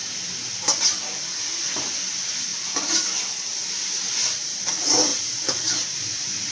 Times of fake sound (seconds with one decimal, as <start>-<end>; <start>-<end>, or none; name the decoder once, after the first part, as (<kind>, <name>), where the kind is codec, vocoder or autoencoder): 1.5-2.5 (vocoder, BigVGAN v2); 3.8-6.5